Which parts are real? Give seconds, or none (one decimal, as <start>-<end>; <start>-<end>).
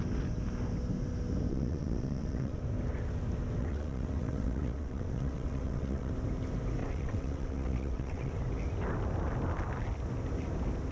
0.0-1.5; 2.6-3.6; 6.1-6.8; 8.3-10.9